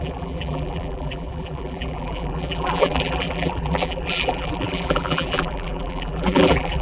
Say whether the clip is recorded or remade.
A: remade